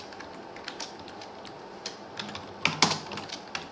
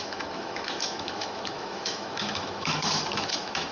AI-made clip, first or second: second